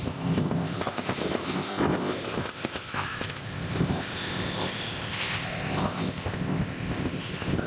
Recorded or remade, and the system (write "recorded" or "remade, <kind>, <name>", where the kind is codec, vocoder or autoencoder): remade, codec, ZipCodec